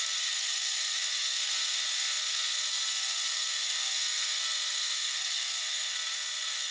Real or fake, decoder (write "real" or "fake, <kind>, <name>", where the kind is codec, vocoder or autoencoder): fake, codec, SNAC